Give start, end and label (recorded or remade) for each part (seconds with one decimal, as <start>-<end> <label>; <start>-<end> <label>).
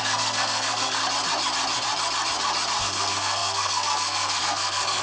0.0-1.0 remade; 1.0-2.8 recorded; 2.8-5.0 remade